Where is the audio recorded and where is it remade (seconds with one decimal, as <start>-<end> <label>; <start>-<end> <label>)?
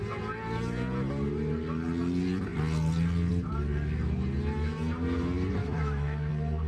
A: 0.0-5.6 recorded; 5.6-6.3 remade; 6.3-6.7 recorded